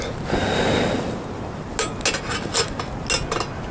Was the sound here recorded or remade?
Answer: recorded